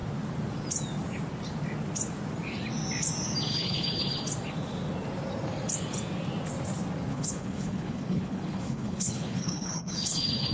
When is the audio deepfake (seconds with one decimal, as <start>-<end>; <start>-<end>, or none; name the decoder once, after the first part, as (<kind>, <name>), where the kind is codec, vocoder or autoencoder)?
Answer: 3.5-4.2 (codec, HILCodec); 7.1-10.5